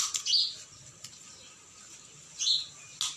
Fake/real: real